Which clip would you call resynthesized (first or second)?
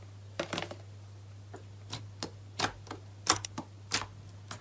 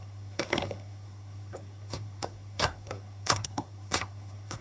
second